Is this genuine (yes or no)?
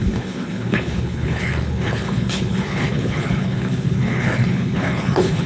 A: no